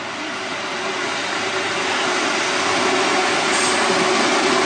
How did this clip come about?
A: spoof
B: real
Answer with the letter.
B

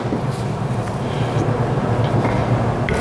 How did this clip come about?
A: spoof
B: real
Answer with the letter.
B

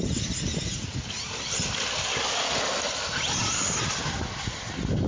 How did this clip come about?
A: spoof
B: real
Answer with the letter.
A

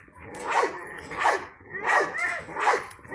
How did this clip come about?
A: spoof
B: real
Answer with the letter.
A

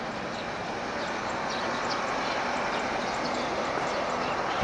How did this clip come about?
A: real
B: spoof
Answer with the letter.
A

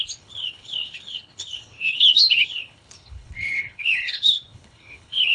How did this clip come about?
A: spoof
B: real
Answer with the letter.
A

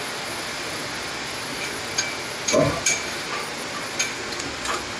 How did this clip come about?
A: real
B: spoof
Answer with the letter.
A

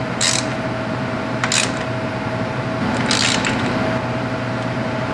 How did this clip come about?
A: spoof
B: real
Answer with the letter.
B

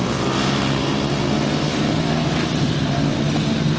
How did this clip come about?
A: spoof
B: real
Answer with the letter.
B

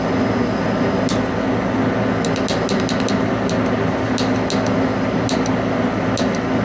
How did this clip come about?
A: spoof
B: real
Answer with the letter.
B